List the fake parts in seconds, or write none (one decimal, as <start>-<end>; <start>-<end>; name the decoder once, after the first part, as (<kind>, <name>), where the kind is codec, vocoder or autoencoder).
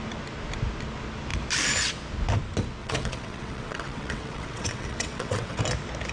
2.8-5.6 (vocoder, WaveNeXt)